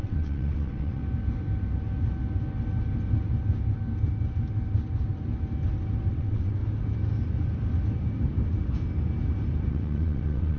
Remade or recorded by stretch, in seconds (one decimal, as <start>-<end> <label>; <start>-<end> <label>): 0.0-1.0 remade; 1.0-6.1 recorded; 6.1-6.6 remade; 6.6-9.7 recorded; 9.7-10.6 remade